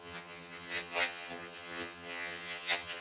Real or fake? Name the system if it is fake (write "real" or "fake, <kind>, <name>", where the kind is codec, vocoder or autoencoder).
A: fake, vocoder, HiFi-GAN